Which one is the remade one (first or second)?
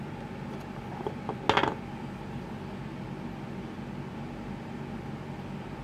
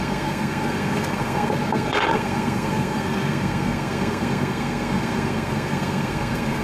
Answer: second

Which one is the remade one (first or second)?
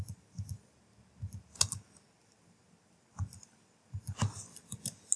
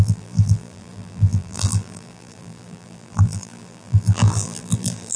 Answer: second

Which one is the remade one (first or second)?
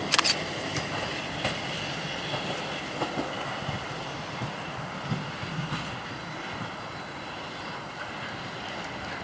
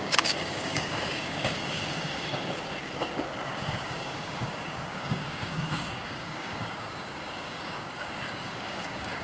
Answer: second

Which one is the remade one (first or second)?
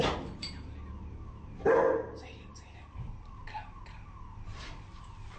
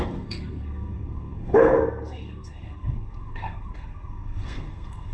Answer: second